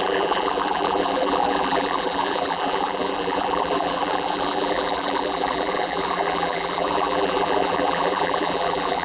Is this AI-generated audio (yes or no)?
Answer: yes